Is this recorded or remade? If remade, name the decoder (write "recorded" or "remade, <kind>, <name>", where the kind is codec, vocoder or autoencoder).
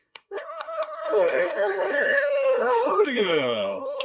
remade, codec, SNAC